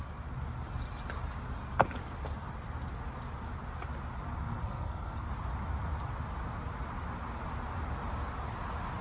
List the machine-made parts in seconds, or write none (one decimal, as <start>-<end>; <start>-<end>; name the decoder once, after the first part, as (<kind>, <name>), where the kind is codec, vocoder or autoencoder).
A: 4.4-5.3 (codec, SNAC)